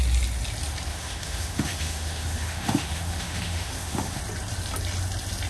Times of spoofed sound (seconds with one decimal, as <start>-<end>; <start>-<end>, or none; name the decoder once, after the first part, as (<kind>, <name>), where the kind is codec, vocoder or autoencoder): 0.9-4.2 (autoencoder, DAC-VAE)